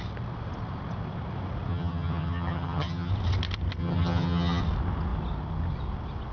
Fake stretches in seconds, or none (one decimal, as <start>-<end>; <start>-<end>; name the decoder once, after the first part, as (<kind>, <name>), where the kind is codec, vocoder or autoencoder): 1.7-3.1 (vocoder, HiFi-GAN); 3.8-4.6